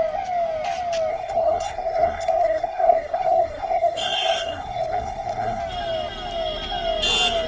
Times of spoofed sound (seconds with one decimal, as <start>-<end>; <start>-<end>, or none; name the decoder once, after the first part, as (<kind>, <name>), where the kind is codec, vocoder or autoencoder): 1.1-5.6 (codec, SNAC)